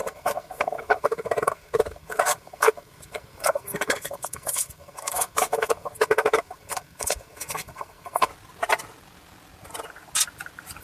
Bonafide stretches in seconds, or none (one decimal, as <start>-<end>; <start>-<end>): 8.3-10.8